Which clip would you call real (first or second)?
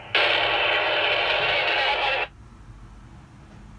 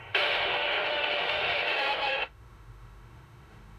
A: first